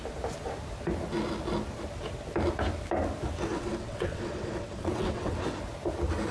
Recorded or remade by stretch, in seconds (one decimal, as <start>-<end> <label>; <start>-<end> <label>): 0.0-3.5 recorded; 3.5-5.6 remade; 5.6-6.3 recorded

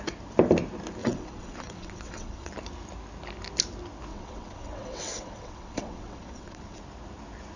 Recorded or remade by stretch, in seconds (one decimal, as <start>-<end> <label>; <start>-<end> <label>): 0.0-1.0 recorded; 1.0-2.5 remade; 2.5-4.1 recorded; 4.1-6.8 remade; 6.8-7.6 recorded

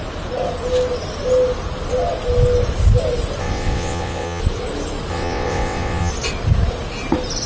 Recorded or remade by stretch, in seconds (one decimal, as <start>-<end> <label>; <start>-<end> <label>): 0.0-3.4 recorded; 3.4-4.4 remade; 4.4-5.1 recorded; 5.1-6.1 remade; 6.1-7.5 recorded

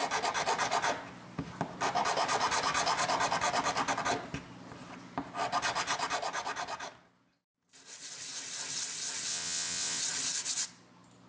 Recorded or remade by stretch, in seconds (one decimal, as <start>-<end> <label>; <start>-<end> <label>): 0.0-9.3 recorded; 9.3-10.0 remade; 10.0-11.3 recorded

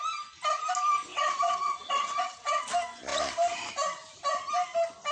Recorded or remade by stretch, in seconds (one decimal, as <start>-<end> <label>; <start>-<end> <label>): 0.0-1.1 recorded; 1.1-2.6 remade; 2.6-5.1 recorded

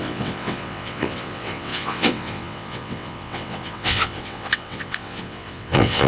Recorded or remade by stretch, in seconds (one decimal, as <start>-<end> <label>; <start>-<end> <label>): 0.0-6.1 remade

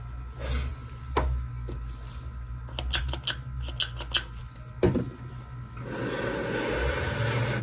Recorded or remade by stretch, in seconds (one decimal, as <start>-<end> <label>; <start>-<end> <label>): 0.0-7.6 recorded

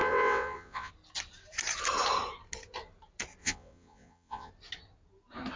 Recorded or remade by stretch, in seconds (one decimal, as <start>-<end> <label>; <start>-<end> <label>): 0.0-0.9 remade; 0.9-3.4 recorded; 3.4-4.5 remade; 4.5-5.6 recorded